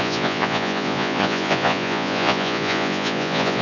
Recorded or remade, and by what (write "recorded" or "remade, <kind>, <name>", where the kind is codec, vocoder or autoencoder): remade, vocoder, Vocos